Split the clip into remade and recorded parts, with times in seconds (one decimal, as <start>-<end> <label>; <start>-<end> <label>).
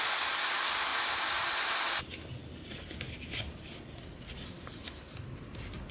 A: 0.0-0.9 recorded; 0.9-2.0 remade; 2.0-5.9 recorded